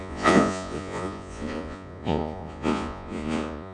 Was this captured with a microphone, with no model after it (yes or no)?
no